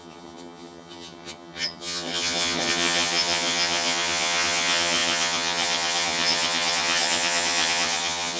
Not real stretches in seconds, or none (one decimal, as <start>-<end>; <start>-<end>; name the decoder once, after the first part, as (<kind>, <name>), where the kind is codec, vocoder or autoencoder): 0.0-8.4 (vocoder, HiFi-GAN)